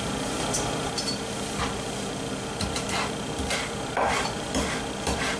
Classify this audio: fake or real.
fake